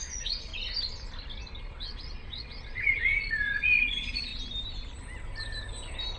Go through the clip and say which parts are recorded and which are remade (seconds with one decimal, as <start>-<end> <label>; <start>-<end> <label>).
0.0-0.5 remade; 0.5-1.6 recorded; 1.6-4.3 remade; 4.3-6.2 recorded